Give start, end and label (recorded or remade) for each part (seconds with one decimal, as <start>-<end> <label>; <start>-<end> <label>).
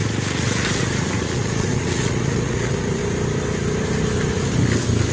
0.0-3.0 remade; 3.0-5.1 recorded